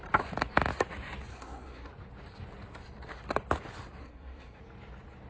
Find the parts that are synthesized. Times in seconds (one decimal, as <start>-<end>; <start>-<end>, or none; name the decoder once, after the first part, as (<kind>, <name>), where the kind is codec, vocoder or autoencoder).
1.3-1.9 (codec, SNAC); 4.0-4.6